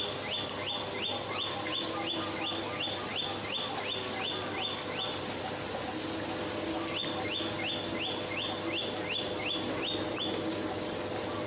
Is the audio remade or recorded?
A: recorded